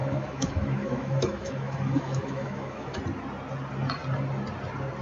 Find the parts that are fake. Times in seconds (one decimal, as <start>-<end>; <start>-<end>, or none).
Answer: 0.0-3.0